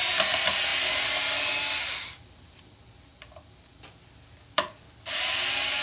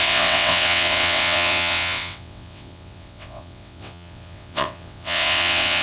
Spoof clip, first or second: second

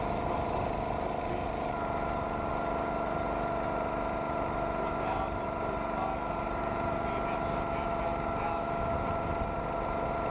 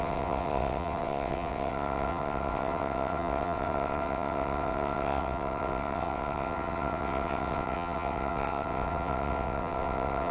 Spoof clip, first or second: second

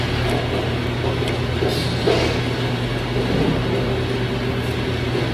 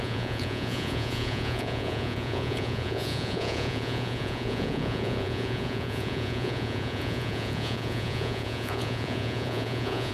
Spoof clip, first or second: second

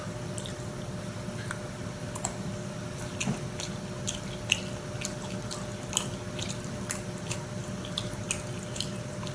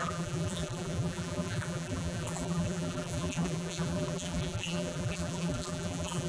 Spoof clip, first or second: second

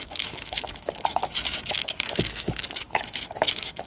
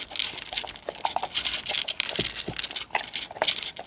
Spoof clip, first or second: first